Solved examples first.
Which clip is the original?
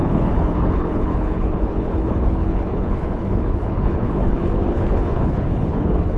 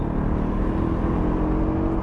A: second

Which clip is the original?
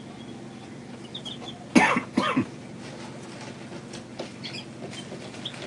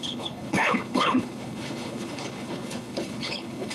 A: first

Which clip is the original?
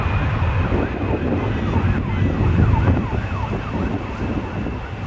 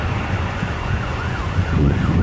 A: first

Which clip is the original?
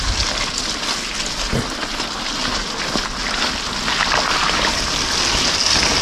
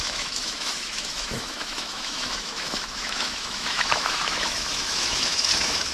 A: first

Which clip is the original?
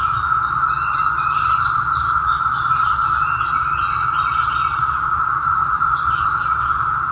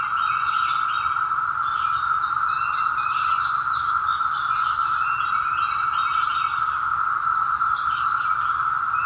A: second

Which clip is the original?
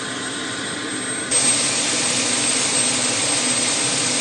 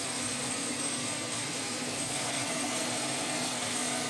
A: first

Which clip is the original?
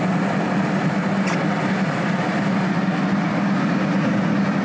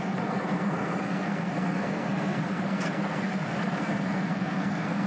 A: first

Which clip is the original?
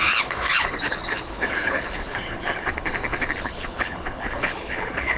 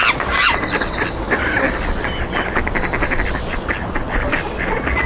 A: second